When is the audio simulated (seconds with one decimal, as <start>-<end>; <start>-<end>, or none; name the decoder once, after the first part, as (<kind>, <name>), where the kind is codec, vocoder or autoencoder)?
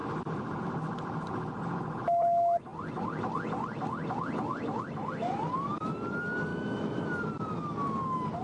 6.5-7.0 (autoencoder, DAC-VAE)